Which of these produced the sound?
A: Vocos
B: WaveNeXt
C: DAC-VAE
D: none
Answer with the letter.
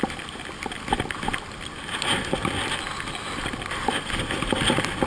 D